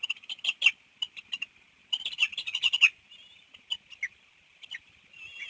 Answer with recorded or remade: recorded